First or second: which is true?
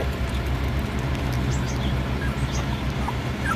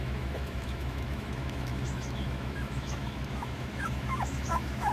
first